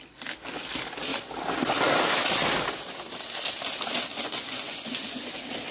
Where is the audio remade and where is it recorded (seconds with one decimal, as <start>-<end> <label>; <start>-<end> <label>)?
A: 0.0-4.1 recorded; 4.1-5.3 remade; 5.3-5.7 recorded

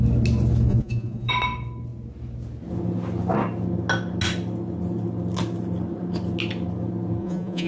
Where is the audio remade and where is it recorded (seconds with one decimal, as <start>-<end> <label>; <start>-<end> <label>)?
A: 0.0-0.7 recorded; 0.7-1.3 remade; 1.3-7.2 recorded; 7.2-7.7 remade

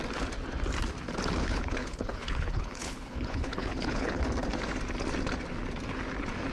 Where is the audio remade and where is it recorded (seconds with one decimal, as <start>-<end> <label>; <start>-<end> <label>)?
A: 0.0-1.4 recorded; 1.4-4.2 remade; 4.2-6.5 recorded

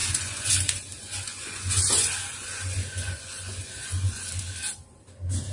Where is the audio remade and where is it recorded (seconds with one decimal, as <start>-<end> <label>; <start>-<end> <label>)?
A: 0.0-0.5 remade; 0.5-1.0 recorded; 1.0-4.3 remade; 4.3-5.5 recorded